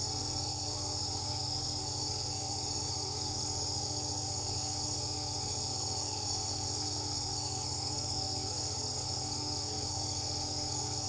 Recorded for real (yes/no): no